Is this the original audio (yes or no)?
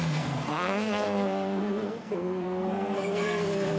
no